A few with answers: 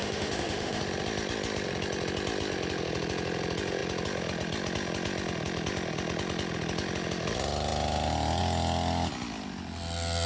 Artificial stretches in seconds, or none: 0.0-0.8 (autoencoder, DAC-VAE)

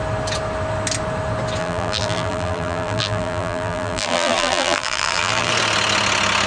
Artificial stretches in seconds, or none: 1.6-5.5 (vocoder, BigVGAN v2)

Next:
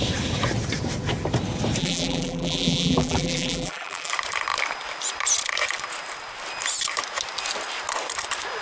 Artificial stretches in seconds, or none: 1.8-4.1 (vocoder, BigVGAN v2)

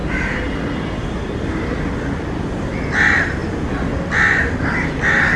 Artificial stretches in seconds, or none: none